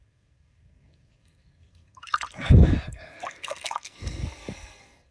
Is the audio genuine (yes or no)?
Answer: no